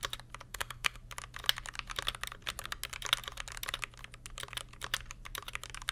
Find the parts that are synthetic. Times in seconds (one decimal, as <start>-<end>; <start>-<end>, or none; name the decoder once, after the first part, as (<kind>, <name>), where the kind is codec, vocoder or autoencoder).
0.5-1.0 (codec, SNAC)